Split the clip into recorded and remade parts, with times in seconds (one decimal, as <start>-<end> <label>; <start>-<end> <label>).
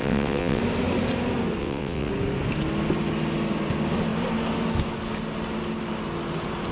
0.0-0.6 remade; 0.6-1.6 recorded; 1.6-2.1 remade; 2.1-6.7 recorded